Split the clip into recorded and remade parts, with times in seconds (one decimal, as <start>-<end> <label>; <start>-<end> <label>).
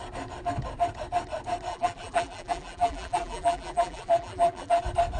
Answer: 0.0-1.7 recorded; 1.7-4.8 remade; 4.8-5.2 recorded